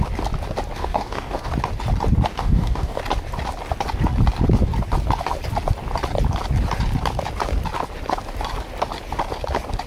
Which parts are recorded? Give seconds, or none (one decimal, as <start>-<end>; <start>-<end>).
0.0-0.8; 1.5-2.3; 3.0-9.9